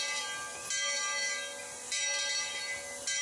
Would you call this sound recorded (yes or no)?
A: yes